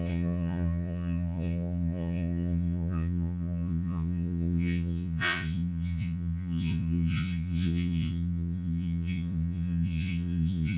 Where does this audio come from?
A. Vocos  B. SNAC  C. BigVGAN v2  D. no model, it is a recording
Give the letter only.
A